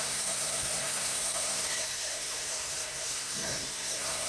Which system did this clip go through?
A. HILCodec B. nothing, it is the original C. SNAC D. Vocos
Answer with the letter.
C